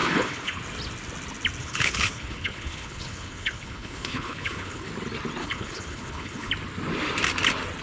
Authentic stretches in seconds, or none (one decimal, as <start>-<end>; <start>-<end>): 0.6-1.6; 4.9-5.4; 6.5-7.8